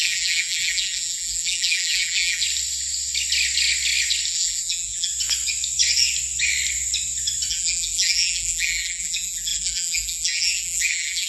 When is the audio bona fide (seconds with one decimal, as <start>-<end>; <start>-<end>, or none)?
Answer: 2.4-4.3; 5.1-7.5